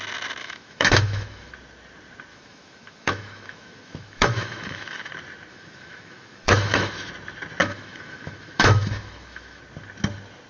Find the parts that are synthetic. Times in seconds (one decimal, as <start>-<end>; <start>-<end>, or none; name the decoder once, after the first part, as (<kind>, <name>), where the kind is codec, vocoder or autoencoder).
0.4-1.5 (autoencoder, DAC-VAE); 2.3-5.1; 5.5-7.1; 7.6-9.6

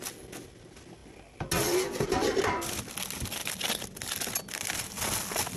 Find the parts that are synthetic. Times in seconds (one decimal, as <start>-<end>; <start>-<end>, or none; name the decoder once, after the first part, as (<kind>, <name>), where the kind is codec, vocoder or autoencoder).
none

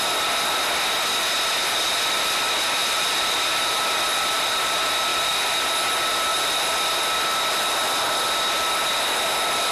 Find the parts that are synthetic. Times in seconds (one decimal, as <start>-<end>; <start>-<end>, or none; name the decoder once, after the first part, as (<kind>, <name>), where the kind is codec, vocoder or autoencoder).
1.6-2.4 (vocoder, BigVGAN v2); 2.8-4.5; 5.1-5.6

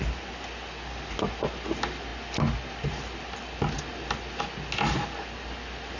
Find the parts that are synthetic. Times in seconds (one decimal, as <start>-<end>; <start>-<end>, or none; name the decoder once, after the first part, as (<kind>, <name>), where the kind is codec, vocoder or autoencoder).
none

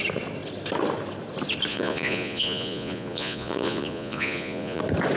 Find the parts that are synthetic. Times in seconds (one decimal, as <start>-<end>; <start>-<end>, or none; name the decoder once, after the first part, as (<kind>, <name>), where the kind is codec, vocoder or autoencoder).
1.7-4.8 (vocoder, Vocos)